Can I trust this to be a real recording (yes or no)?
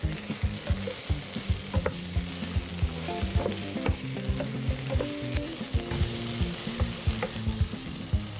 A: yes